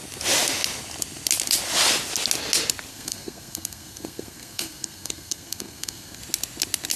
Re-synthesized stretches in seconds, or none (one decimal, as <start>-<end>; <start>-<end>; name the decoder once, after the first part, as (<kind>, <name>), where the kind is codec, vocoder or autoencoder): 2.9-6.2 (codec, SNAC)